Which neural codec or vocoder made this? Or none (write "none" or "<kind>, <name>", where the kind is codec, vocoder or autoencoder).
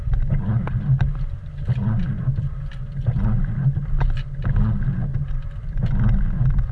none